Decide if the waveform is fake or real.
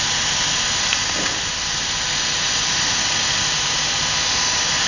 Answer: real